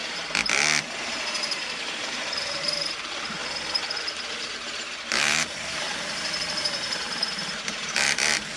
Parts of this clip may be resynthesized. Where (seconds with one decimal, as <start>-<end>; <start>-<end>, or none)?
1.8-3.4; 4.5-8.6